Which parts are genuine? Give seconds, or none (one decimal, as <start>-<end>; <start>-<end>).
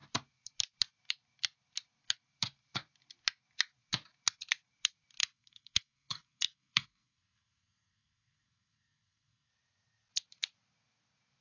0.0-5.2; 9.5-11.4